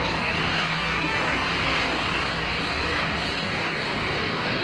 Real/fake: fake